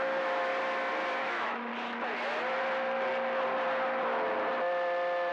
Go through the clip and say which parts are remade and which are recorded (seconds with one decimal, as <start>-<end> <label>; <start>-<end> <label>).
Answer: 0.0-0.5 remade; 0.5-1.2 recorded; 1.2-1.7 remade; 1.7-5.3 recorded